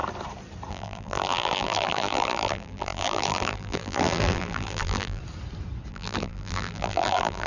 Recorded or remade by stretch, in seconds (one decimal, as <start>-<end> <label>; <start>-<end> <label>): 0.0-0.7 recorded; 0.7-5.2 remade; 5.2-5.9 recorded; 5.9-7.5 remade